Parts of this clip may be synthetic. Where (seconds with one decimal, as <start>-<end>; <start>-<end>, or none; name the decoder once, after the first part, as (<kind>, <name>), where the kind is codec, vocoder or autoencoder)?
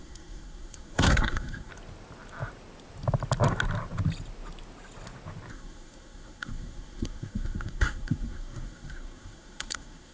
0.0-1.7 (codec, SNAC); 5.5-10.1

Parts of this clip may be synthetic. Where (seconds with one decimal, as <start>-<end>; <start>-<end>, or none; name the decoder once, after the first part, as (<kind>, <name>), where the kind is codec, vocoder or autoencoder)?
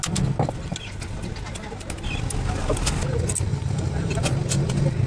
3.5-4.1 (vocoder, BigVGAN v2)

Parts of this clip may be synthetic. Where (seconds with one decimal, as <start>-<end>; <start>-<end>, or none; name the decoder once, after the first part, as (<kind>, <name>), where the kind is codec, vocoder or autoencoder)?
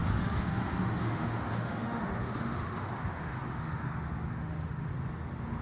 0.0-3.8 (autoencoder, DAC-VAE); 4.3-4.9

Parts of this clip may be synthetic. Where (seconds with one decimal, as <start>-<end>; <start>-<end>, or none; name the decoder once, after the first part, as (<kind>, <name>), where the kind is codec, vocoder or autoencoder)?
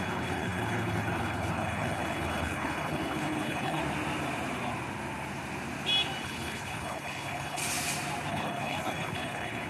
0.0-3.8 (codec, HILCodec); 6.2-7.6; 8.3-9.7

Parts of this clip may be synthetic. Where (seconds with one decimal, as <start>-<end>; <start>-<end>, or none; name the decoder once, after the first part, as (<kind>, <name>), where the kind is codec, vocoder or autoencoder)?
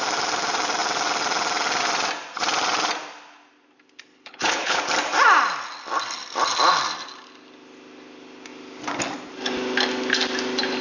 4.1-4.8 (codec, HILCodec)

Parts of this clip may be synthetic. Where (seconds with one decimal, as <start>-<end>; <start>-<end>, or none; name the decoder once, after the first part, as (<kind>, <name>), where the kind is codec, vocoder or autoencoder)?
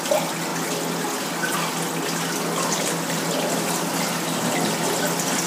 none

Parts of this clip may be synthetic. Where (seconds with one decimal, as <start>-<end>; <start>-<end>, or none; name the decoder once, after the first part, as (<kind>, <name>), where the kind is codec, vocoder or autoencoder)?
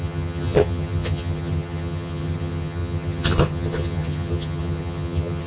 0.0-5.5 (vocoder, HiFi-GAN)